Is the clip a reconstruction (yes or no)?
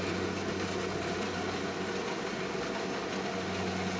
no